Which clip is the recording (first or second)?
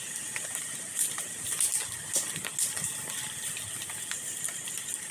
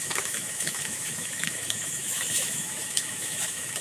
first